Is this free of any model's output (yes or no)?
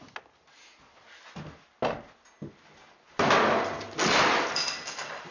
yes